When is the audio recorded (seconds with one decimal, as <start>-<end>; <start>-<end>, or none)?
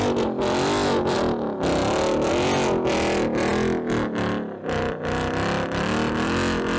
0.0-6.8